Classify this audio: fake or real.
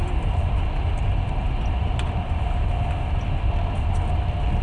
real